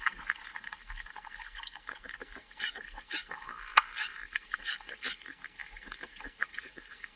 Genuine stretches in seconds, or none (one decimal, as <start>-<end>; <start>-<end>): none